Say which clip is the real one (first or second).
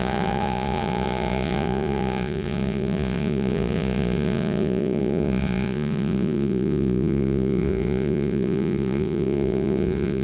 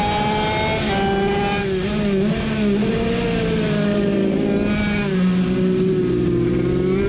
second